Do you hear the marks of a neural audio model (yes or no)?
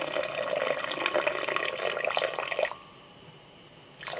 no